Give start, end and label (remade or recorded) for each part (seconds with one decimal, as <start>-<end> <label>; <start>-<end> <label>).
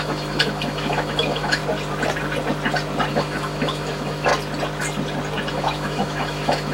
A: 0.0-1.6 remade; 1.6-3.1 recorded; 3.1-4.3 remade; 4.3-5.5 recorded; 5.5-6.7 remade